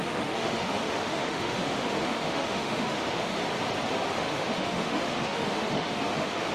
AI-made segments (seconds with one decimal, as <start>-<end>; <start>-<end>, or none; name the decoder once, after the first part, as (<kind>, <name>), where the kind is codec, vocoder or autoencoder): 0.0-3.4 (autoencoder, DAC-VAE); 4.1-6.5